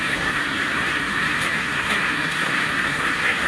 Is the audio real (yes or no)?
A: no